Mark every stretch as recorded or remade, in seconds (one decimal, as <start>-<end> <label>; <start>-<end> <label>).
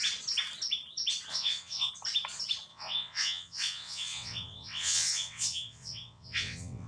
0.0-1.3 recorded; 1.3-1.9 remade; 1.9-2.7 recorded; 2.7-6.9 remade